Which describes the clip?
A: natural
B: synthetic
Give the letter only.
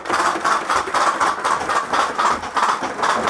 A